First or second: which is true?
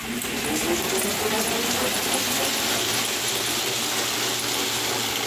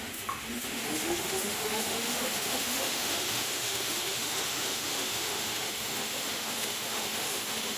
first